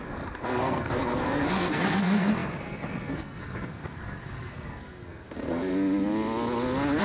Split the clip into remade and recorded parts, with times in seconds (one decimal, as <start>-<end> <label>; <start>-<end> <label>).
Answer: 0.0-5.7 remade; 5.7-7.0 recorded